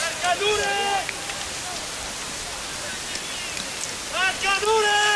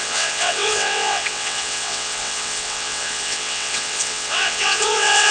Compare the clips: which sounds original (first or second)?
first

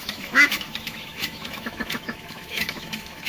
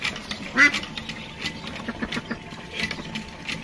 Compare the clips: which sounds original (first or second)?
second